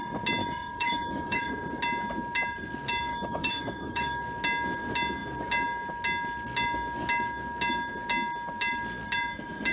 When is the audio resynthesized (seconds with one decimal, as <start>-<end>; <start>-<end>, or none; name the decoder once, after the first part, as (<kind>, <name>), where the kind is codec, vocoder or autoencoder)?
0.4-1.5 (autoencoder, DAC-VAE); 3.1-4.2